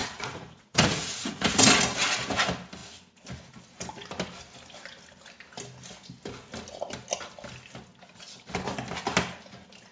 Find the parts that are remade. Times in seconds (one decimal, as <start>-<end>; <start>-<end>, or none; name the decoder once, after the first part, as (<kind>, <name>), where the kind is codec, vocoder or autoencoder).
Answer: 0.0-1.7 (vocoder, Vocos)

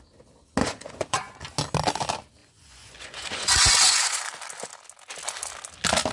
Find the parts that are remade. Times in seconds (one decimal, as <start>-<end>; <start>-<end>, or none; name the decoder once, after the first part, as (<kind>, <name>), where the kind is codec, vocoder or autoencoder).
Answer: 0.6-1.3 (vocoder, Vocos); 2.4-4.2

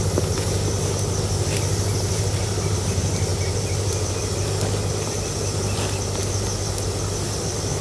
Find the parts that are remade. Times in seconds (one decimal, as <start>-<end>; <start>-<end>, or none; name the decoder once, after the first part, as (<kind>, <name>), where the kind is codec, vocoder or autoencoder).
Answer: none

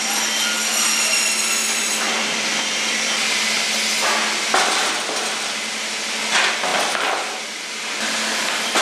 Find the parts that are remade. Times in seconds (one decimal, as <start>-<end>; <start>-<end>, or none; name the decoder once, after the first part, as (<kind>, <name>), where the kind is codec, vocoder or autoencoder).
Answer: none